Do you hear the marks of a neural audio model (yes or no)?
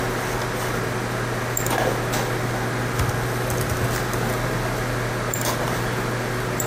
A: no